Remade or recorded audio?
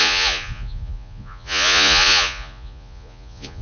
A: remade